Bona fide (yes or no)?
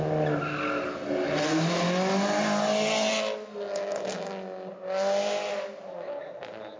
yes